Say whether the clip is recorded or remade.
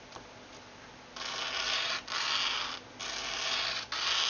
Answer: recorded